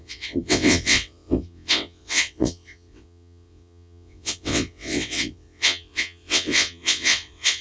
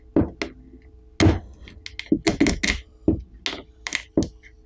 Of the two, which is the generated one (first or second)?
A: first